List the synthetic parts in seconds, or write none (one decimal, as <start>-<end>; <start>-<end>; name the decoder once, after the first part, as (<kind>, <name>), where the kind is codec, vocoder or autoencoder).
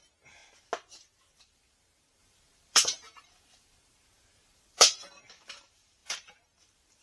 0.0-0.4 (vocoder, BigVGAN v2); 1.4-7.0